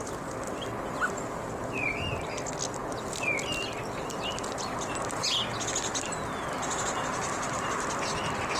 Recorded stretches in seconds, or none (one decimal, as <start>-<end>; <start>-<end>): 0.0-8.6